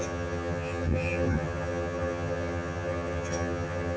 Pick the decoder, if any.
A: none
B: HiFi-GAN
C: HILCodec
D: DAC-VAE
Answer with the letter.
B